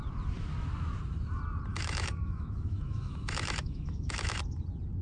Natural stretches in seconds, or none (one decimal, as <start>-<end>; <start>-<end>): 0.0-1.7; 4.4-5.0